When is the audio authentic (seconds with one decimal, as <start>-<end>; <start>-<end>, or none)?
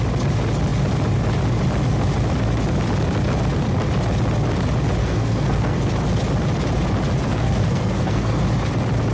0.0-5.0; 5.8-7.3; 8.4-9.1